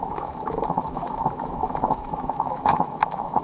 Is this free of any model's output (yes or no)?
no